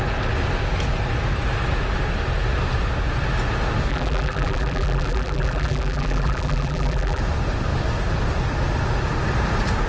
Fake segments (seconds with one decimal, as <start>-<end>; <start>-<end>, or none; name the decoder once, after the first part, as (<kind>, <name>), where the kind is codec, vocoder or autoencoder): 3.9-7.2 (vocoder, BigVGAN v2)